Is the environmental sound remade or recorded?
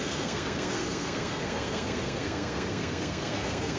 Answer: remade